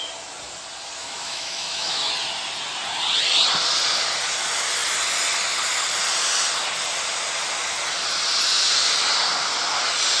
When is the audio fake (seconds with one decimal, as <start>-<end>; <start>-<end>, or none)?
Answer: 1.0-2.1